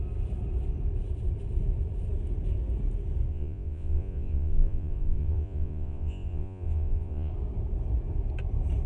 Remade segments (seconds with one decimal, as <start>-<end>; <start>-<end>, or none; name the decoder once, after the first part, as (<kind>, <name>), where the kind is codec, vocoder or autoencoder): 3.3-7.3 (vocoder, Vocos)